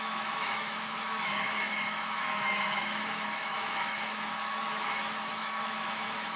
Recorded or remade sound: remade